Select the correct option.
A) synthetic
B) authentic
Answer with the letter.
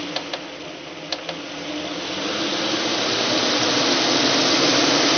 B